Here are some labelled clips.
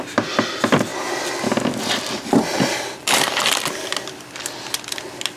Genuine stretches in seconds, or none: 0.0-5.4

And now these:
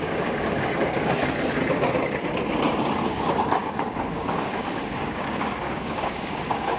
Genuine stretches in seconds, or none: 1.2-3.1

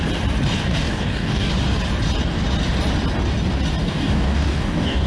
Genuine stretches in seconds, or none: 0.0-0.6; 1.5-3.8

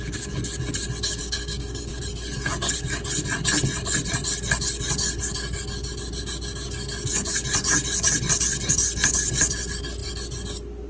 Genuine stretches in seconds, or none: 0.0-1.2; 2.0-10.9

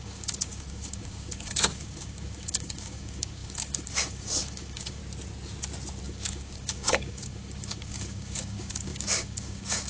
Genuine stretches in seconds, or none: 5.0-6.0